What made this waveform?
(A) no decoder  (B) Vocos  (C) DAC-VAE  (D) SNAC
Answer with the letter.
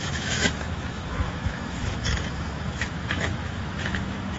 C